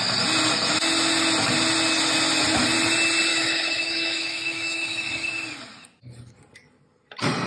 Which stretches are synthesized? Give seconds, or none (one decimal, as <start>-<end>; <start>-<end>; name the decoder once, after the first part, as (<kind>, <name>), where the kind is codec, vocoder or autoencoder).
3.3-5.1 (autoencoder, DAC-VAE)